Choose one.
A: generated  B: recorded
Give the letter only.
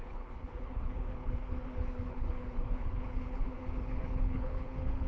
A